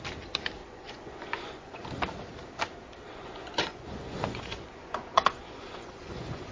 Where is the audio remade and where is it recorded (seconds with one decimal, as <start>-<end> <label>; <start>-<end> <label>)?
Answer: 0.0-0.6 recorded; 0.6-1.9 remade; 1.9-3.1 recorded; 3.1-6.5 remade